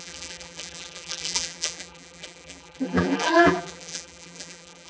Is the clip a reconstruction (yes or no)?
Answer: yes